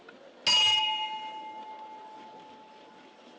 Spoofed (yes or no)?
no